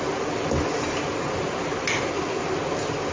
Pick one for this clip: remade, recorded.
recorded